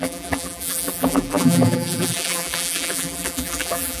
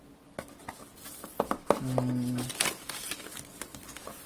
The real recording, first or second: second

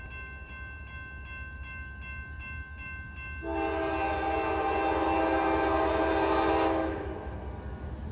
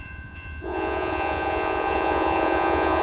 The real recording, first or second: first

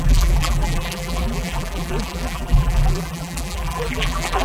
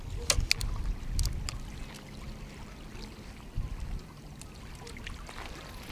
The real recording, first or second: second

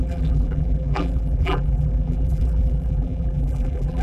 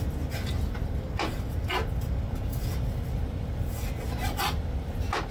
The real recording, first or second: second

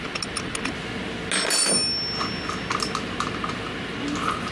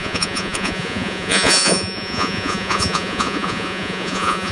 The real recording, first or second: first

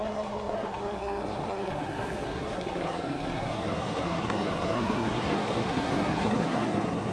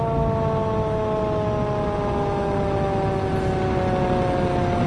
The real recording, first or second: second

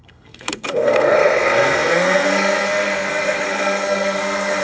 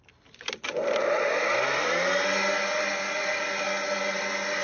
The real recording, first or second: second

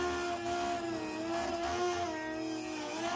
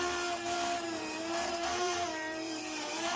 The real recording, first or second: first